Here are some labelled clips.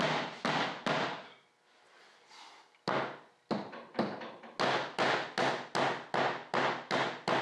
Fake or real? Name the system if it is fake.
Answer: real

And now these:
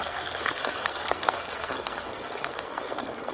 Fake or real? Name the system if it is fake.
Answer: fake, codec, SNAC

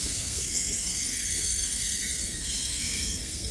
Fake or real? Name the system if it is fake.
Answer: fake, codec, SNAC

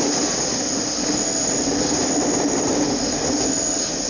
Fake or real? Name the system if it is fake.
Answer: real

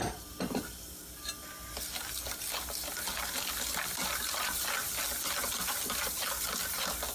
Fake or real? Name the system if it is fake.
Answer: real